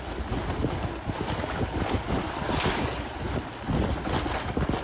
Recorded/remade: recorded